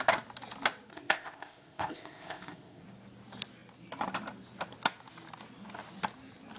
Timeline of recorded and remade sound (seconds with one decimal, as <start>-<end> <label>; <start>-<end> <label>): 0.0-0.9 recorded; 0.9-2.8 remade; 2.8-6.6 recorded